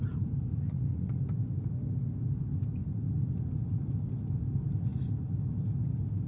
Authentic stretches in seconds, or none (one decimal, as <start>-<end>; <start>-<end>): 0.0-0.5; 1.2-6.3